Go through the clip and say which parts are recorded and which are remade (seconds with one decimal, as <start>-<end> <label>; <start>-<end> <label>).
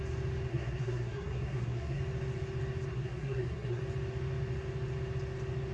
0.0-0.5 recorded; 0.5-2.0 remade; 2.0-2.9 recorded; 2.9-3.8 remade; 3.8-5.7 recorded